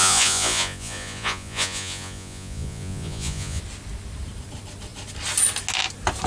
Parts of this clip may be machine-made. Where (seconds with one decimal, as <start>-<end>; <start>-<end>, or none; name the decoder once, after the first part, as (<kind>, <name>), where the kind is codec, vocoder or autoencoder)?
0.0-3.6 (vocoder, Vocos)